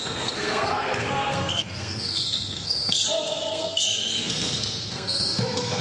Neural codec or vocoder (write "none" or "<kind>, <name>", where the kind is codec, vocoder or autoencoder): codec, SNAC